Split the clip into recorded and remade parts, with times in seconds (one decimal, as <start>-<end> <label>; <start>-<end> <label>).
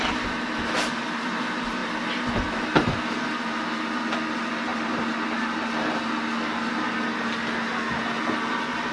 0.0-8.9 recorded